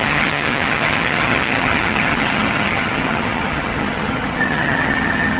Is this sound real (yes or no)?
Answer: no